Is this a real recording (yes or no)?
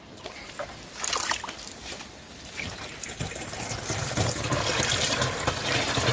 yes